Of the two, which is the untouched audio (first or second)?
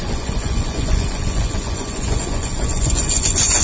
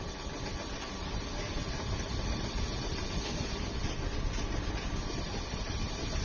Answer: second